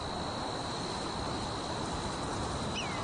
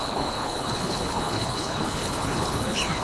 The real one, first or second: first